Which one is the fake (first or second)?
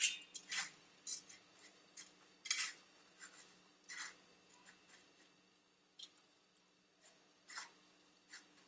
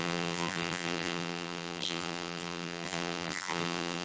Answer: second